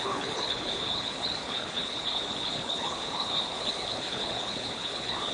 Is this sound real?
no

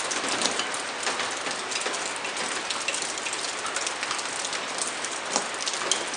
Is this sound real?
yes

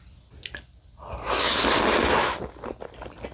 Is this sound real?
yes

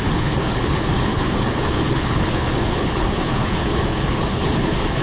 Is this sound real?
no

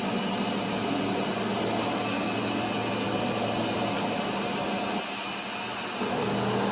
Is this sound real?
yes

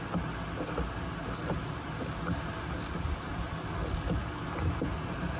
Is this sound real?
yes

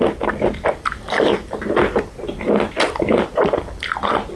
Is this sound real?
yes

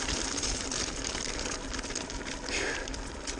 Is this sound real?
yes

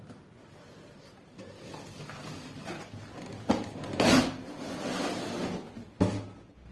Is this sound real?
yes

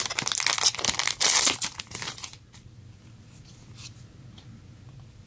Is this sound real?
yes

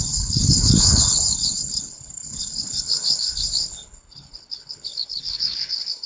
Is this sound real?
no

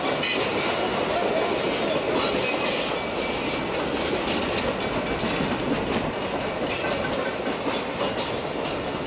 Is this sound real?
yes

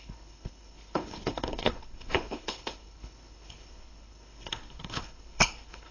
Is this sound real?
no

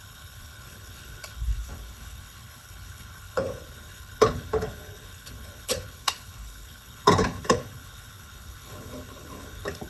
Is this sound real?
no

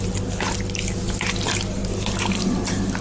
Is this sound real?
yes